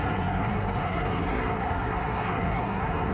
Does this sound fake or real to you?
fake